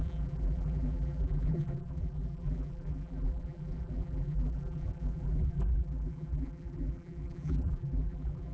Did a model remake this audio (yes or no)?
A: yes